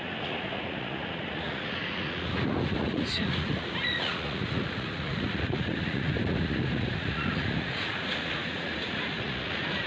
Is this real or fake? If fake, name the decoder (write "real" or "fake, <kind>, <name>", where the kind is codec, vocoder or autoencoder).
fake, vocoder, Vocos